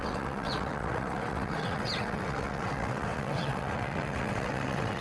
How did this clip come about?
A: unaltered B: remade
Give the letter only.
B